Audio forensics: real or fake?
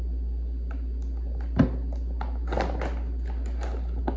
real